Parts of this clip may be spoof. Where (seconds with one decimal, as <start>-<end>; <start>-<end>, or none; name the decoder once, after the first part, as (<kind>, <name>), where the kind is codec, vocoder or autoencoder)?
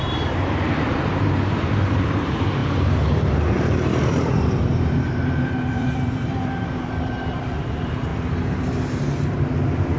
0.0-8.1 (vocoder, BigVGAN v2)